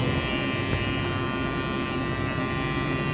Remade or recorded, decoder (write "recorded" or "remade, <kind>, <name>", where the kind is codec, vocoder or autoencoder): recorded